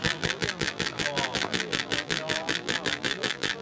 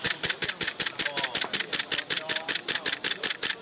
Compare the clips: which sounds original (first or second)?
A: second